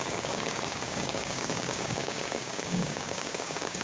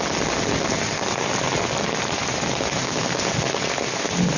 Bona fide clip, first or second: second